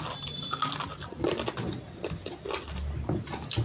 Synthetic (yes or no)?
no